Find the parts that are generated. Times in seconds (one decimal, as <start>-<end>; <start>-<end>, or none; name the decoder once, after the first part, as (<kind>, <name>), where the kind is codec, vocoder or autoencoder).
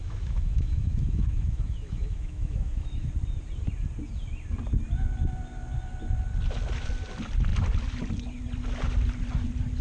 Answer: 0.0-3.1 (autoencoder, DAC-VAE)